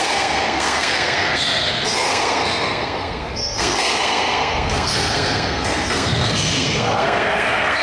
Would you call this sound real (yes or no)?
no